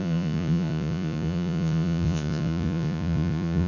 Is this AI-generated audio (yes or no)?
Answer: yes